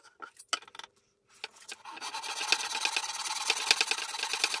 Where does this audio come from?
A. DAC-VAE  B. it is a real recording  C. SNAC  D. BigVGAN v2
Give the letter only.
B